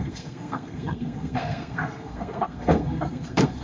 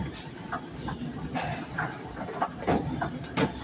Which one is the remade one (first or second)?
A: first